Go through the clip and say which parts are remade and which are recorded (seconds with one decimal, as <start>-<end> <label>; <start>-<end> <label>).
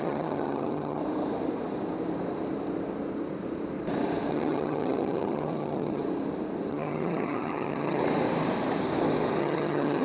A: 0.0-1.0 remade; 1.0-4.3 recorded; 4.3-6.0 remade; 6.0-6.7 recorded; 6.7-8.0 remade; 8.0-9.4 recorded; 9.4-10.0 remade